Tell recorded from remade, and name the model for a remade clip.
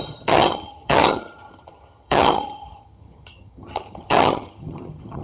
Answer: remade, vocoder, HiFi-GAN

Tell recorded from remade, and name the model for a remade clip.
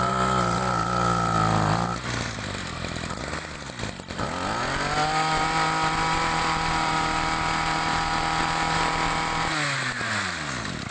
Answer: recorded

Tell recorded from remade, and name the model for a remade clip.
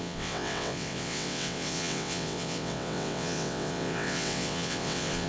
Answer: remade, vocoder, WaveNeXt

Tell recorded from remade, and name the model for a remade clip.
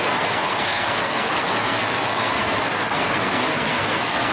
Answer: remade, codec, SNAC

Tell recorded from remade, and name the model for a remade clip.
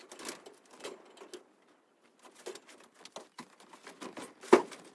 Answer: recorded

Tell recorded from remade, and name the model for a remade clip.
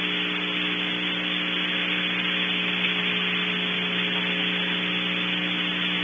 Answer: recorded